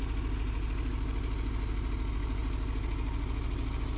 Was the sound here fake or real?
real